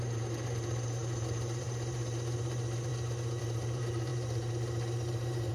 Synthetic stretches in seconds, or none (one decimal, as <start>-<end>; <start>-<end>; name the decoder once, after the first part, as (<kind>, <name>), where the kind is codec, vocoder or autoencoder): 0.0-2.9 (vocoder, BigVGAN v2); 3.4-5.5